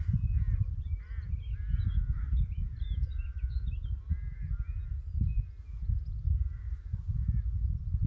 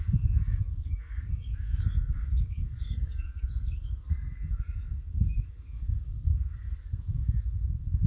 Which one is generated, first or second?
second